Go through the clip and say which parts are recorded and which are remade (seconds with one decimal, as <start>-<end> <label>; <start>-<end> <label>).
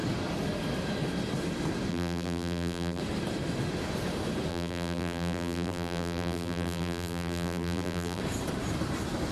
0.0-1.9 recorded; 1.9-3.0 remade; 3.0-4.5 recorded; 4.5-8.2 remade; 8.2-9.3 recorded